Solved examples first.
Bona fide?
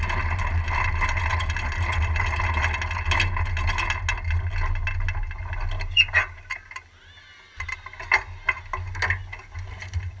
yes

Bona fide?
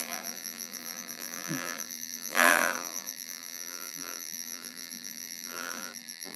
no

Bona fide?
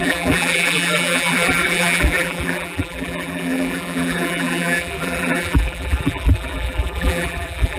no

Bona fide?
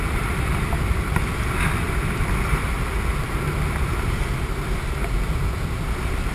yes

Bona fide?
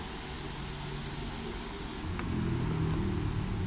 yes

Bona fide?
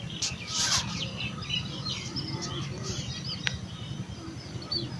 yes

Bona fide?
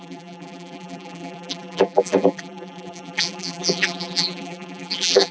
no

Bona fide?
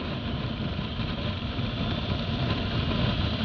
yes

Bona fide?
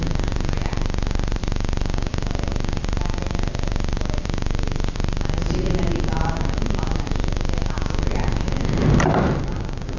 no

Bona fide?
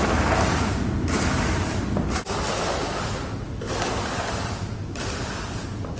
yes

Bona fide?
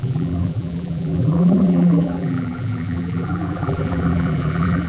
no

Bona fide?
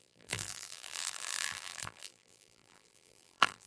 no